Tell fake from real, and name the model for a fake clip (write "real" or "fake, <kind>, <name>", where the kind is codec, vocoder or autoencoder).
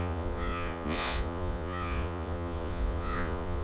fake, vocoder, Vocos